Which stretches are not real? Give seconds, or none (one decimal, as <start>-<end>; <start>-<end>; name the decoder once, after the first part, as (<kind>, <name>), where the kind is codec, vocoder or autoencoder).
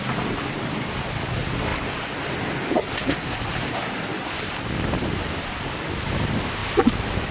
0.0-7.3 (vocoder, BigVGAN v2)